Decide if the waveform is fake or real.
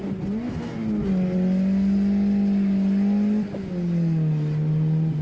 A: real